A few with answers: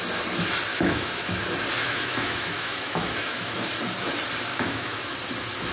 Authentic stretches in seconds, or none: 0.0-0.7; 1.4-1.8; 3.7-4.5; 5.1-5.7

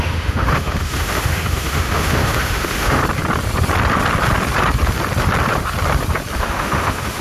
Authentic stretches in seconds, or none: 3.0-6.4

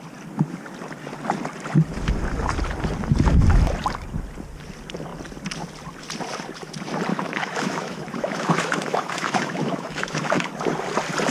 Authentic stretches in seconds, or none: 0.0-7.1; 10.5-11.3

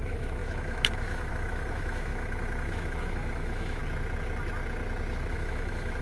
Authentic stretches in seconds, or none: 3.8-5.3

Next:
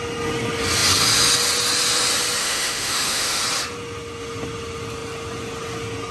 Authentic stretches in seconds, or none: 0.0-2.4; 3.4-6.1

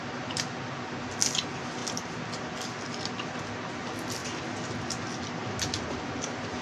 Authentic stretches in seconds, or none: 0.0-6.6